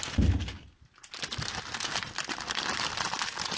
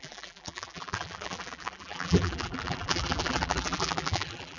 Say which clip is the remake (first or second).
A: second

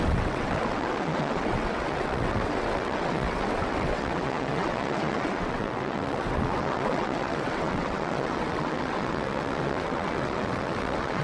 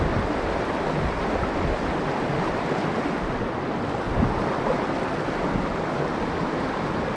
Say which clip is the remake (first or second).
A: first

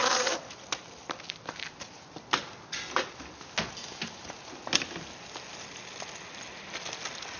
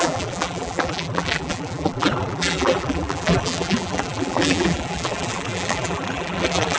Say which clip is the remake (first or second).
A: second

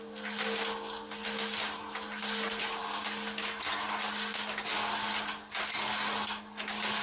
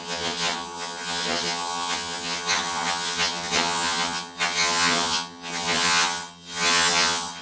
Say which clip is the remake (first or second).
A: second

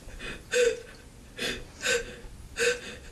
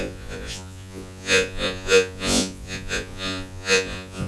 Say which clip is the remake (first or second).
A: second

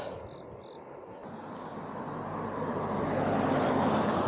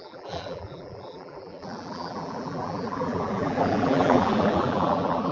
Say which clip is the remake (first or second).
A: second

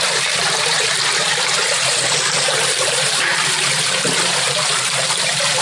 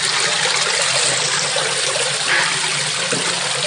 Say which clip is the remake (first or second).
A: first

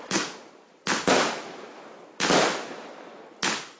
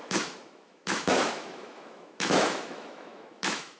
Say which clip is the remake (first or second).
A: second